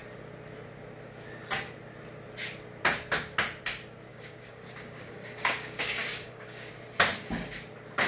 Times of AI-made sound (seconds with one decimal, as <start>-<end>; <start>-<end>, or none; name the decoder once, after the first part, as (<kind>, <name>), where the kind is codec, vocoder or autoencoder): 4.1-6.7 (codec, DAC)